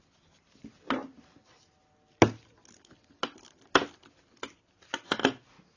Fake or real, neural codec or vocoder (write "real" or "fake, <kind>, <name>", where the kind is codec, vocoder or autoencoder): real